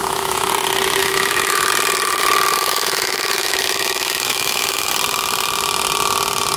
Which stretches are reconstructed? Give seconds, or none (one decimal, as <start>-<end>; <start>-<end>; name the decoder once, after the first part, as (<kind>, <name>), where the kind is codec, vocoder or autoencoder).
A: 0.0-0.5 (autoencoder, DAC-VAE); 1.0-1.7; 2.5-4.9